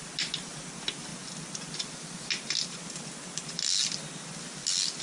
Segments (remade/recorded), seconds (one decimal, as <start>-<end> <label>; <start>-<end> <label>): 0.0-5.0 recorded